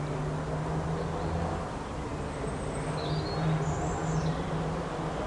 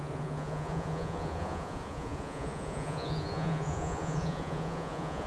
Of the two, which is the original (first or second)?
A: first